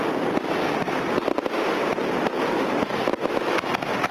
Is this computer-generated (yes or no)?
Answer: no